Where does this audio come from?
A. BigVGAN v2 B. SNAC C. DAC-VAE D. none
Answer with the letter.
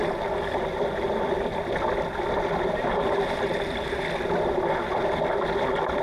D